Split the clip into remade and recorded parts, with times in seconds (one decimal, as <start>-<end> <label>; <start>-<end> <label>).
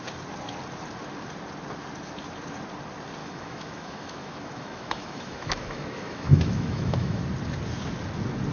0.0-3.2 recorded; 3.2-7.2 remade; 7.2-8.5 recorded